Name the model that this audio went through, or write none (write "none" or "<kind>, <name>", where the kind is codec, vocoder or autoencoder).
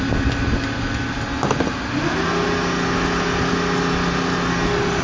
none